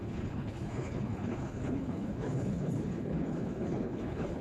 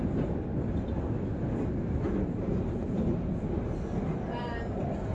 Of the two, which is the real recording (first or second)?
second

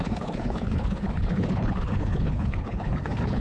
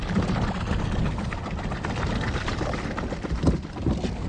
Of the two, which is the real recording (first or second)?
second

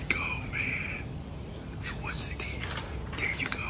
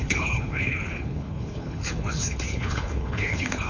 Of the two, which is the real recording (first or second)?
first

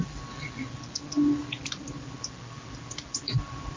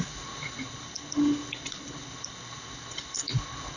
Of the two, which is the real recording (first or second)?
first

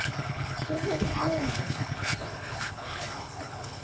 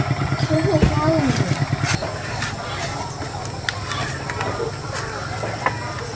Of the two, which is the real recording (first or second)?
second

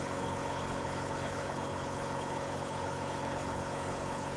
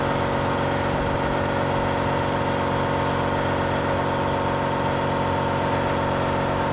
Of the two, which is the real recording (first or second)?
second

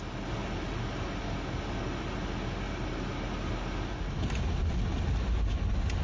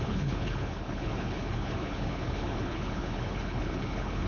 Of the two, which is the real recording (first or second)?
first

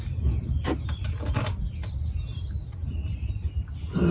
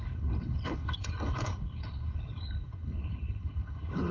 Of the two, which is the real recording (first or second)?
first